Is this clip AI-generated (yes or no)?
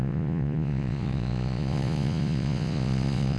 yes